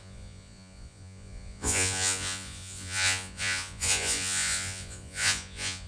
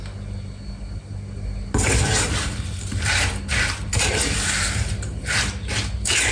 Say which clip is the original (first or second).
second